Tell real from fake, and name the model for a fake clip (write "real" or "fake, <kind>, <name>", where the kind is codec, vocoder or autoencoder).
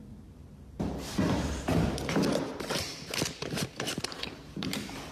fake, vocoder, BigVGAN v2